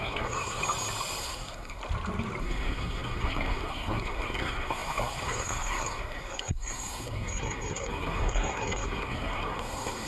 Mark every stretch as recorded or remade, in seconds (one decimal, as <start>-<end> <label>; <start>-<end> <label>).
0.0-0.6 remade; 0.6-1.2 recorded; 1.2-1.8 remade; 1.8-2.4 recorded; 2.4-10.1 remade